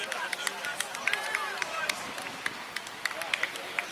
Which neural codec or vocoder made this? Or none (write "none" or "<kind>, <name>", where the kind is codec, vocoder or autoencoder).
none